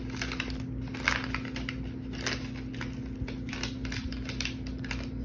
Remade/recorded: recorded